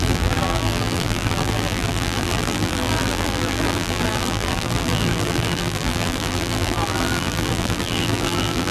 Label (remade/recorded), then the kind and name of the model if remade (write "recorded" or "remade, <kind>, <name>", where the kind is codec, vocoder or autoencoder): remade, vocoder, BigVGAN v2